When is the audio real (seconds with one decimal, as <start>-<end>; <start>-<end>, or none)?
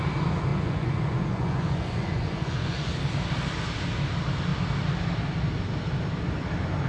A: 0.0-0.5; 2.9-6.9